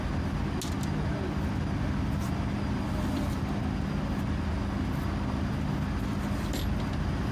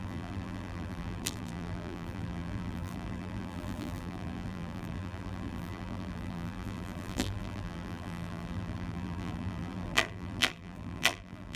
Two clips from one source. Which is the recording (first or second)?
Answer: first